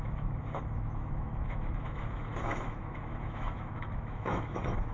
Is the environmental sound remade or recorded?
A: remade